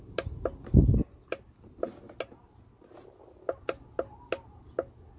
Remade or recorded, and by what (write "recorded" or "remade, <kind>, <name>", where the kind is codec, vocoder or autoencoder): recorded